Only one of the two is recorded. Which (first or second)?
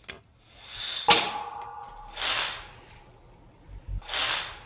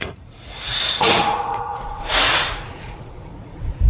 first